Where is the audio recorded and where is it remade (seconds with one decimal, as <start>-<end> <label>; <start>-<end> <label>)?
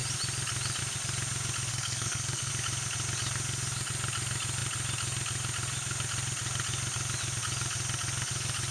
0.0-1.7 recorded; 1.7-2.5 remade; 2.5-8.7 recorded